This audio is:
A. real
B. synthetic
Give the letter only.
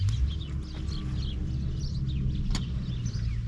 A